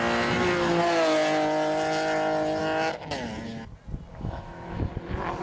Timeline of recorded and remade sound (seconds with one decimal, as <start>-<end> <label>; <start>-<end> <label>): 0.0-2.6 recorded; 2.6-3.3 remade; 3.3-4.1 recorded; 4.1-4.9 remade; 4.9-5.4 recorded